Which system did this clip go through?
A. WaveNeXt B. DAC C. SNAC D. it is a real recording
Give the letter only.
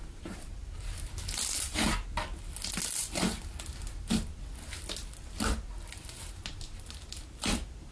D